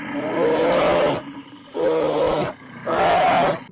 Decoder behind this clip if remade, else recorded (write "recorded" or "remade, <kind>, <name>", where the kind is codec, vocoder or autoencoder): recorded